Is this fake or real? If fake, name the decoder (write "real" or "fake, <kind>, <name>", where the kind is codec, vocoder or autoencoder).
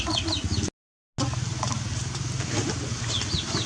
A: real